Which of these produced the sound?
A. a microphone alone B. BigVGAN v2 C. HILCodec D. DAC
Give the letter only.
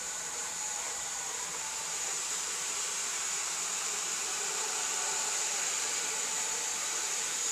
B